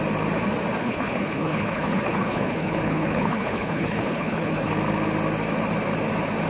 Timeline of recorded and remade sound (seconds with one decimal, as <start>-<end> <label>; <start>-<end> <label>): 0.0-0.8 recorded; 0.8-4.7 remade; 4.7-6.5 recorded